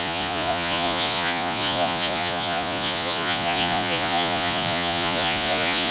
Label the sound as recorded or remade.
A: remade